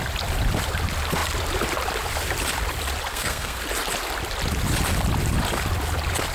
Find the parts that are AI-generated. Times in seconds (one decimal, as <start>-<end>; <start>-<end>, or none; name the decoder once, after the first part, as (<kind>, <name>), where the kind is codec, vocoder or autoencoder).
3.1-3.6 (codec, SNAC)